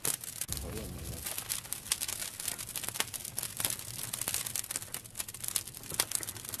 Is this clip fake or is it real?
real